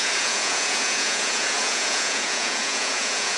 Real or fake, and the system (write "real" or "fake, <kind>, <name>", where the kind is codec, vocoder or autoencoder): fake, vocoder, Vocos